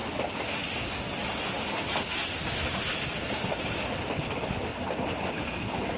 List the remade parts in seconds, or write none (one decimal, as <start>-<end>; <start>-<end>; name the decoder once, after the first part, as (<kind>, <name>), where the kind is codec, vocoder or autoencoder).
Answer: none

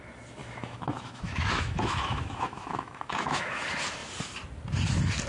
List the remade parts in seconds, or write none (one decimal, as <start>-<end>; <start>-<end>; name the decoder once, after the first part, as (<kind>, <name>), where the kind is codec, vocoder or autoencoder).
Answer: 0.4-3.6 (autoencoder, DAC-VAE)

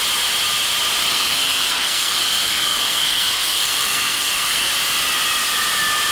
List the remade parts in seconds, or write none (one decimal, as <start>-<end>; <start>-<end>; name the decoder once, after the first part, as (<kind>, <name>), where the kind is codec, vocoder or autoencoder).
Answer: 1.0-4.7 (codec, SNAC)

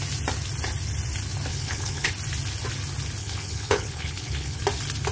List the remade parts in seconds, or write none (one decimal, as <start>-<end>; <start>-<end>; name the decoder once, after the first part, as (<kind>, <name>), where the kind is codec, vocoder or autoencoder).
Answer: 1.5-2.1 (codec, HILCodec); 3.2-4.6

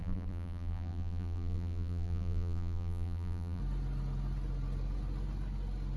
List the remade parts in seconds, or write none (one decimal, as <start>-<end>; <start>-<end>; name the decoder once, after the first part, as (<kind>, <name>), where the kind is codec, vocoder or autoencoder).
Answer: 0.0-3.6 (vocoder, BigVGAN v2)

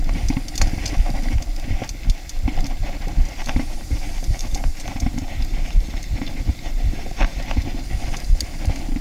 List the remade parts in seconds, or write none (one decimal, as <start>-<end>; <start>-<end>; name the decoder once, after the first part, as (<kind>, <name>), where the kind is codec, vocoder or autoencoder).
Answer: 3.4-7.4 (vocoder, BigVGAN v2)